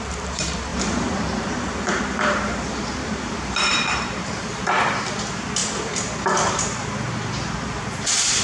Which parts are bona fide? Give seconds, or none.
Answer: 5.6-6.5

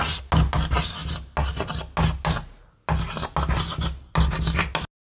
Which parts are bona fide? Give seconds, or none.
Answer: 0.0-5.1

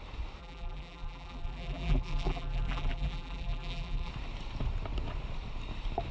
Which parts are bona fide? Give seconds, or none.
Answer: 0.0-0.4; 4.1-6.1

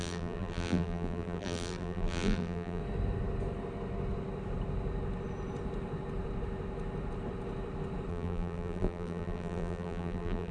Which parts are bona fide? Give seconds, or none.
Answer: 2.8-8.1

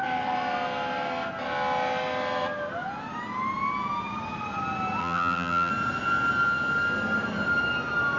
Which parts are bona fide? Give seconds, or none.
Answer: 0.0-5.0; 5.7-8.2

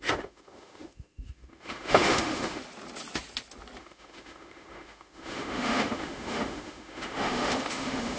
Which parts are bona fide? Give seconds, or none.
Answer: 2.6-3.8